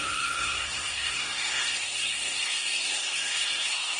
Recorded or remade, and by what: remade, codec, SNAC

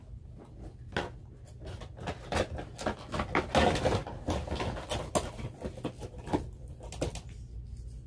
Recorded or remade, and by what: recorded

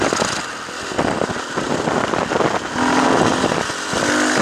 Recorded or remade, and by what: recorded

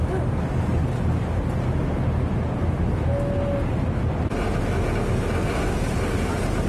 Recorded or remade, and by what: recorded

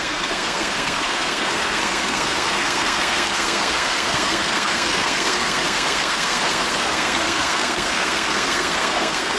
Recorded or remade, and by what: remade, codec, SNAC